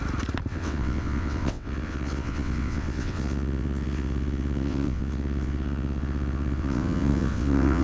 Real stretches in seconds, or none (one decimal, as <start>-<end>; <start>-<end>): 0.0-0.5